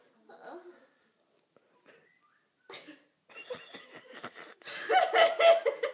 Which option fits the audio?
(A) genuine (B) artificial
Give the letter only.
A